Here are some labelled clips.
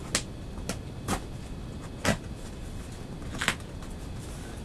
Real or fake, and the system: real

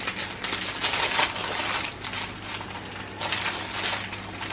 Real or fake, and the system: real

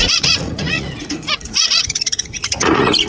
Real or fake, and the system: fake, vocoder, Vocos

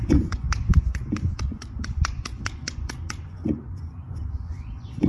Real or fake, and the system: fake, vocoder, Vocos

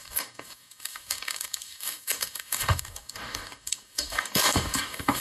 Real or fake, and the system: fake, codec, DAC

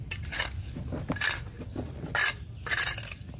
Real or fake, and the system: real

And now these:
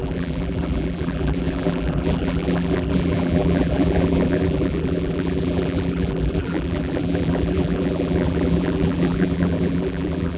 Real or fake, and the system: fake, vocoder, BigVGAN v2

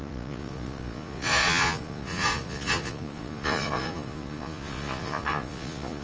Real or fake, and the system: fake, vocoder, Vocos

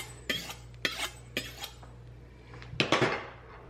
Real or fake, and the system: real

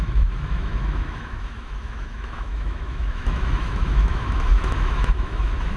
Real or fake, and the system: fake, autoencoder, DAC-VAE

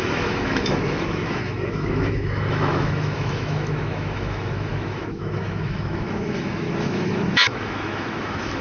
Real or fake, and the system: fake, autoencoder, DAC-VAE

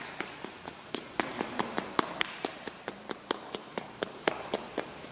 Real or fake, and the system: fake, vocoder, BigVGAN v2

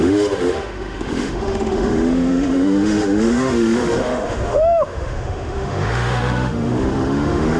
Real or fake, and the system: fake, autoencoder, DAC-VAE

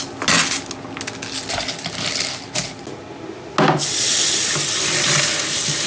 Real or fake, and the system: real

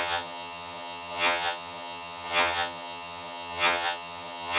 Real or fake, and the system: fake, vocoder, HiFi-GAN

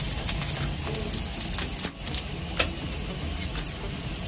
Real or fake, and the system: real